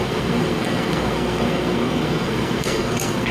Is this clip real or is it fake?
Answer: fake